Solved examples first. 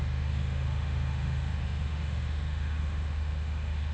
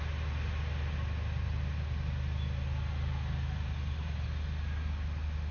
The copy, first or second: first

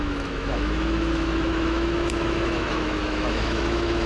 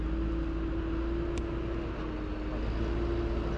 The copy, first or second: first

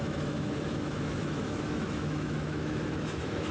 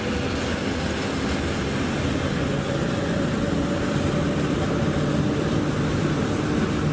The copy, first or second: first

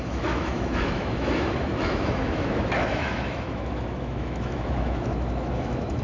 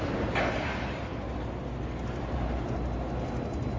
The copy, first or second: first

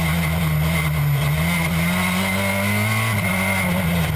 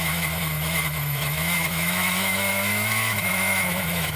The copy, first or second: second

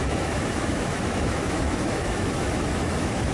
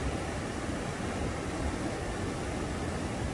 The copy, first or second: first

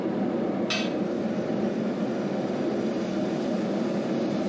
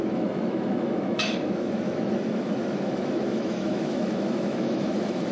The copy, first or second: second